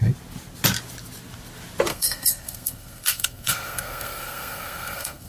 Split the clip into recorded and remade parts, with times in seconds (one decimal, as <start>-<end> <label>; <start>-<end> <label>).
0.0-1.9 recorded; 1.9-5.3 remade